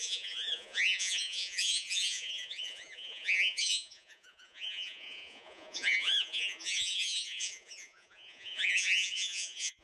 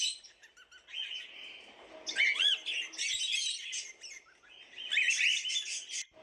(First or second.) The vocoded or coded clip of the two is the first